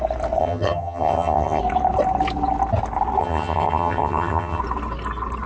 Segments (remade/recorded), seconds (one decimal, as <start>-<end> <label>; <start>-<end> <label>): 0.0-0.4 recorded; 0.4-1.6 remade; 1.6-3.2 recorded; 3.2-4.6 remade; 4.6-5.5 recorded